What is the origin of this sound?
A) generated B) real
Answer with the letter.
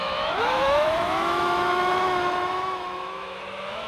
A